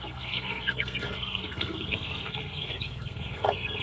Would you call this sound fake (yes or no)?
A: yes